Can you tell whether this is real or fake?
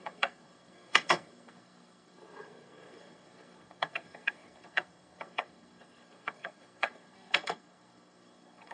fake